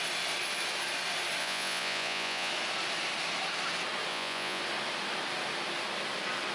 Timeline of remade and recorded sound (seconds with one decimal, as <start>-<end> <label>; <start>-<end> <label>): 0.0-1.4 recorded; 1.4-2.5 remade; 2.5-4.1 recorded; 4.1-4.6 remade; 4.6-6.5 recorded